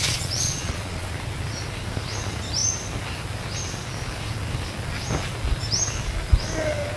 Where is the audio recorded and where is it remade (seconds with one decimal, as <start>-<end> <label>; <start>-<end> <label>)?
0.0-1.1 remade; 1.1-7.0 recorded